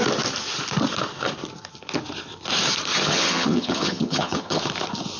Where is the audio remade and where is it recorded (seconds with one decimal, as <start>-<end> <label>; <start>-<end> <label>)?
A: 0.0-2.9 recorded; 2.9-4.6 remade; 4.6-5.2 recorded